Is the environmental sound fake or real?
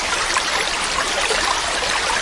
fake